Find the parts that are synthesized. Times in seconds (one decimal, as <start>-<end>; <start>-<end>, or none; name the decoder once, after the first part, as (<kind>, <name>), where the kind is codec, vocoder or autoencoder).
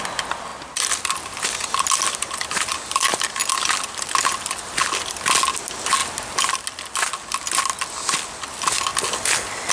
none